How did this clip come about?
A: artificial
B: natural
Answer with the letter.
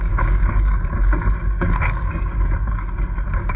A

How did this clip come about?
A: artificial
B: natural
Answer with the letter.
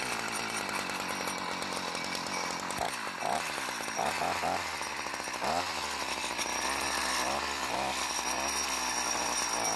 B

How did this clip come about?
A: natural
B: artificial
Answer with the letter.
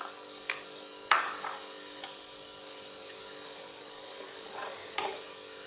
B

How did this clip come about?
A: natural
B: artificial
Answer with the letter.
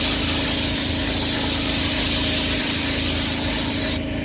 A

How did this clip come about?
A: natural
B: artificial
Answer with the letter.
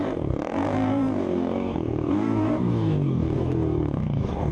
B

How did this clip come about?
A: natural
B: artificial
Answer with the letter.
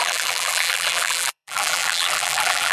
B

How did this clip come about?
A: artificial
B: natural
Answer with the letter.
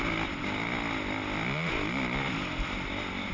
B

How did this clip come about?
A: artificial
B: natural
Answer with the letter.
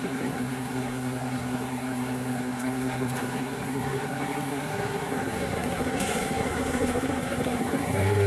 A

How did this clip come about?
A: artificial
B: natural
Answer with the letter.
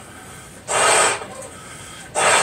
B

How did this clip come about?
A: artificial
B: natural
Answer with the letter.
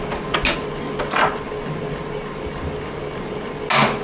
B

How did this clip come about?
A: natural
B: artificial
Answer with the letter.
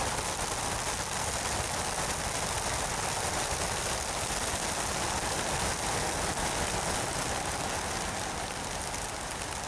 A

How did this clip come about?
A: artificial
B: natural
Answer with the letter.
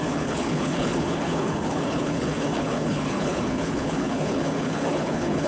A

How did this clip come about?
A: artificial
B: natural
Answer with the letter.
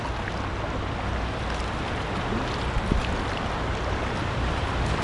B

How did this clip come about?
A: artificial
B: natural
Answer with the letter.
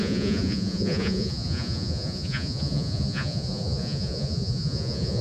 A